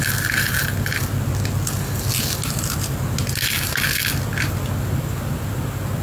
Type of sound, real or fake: real